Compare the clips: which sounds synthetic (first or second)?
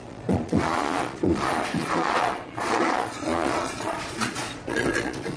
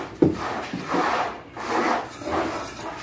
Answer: first